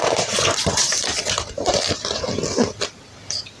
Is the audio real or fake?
fake